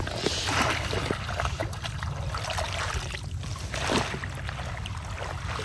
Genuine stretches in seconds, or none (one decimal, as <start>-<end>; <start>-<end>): 0.0-5.6